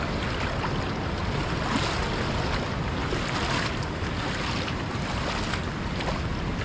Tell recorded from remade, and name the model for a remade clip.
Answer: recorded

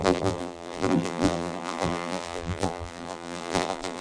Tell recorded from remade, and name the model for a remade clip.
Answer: remade, vocoder, BigVGAN v2